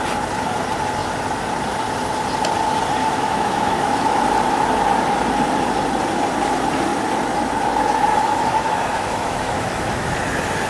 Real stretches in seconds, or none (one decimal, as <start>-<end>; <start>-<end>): 0.0-3.0; 4.2-8.1; 10.1-10.7